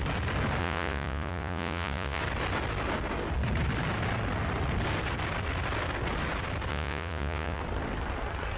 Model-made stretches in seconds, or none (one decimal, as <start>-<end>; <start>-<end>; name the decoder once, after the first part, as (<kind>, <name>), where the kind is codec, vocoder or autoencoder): 0.6-2.2 (vocoder, Vocos); 6.7-7.6